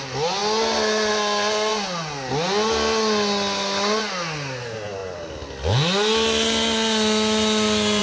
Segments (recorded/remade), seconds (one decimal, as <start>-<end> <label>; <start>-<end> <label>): 0.0-8.0 recorded